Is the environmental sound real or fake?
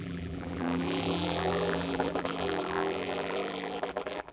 fake